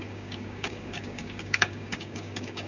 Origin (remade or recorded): remade